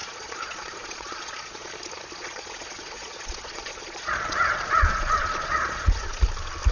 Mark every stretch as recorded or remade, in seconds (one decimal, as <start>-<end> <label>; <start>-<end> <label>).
0.0-1.7 remade; 1.7-2.2 recorded; 2.2-6.2 remade; 6.2-6.7 recorded